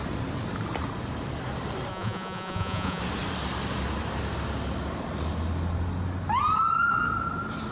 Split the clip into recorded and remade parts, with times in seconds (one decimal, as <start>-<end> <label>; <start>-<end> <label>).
0.0-1.9 recorded; 1.9-3.0 remade; 3.0-7.7 recorded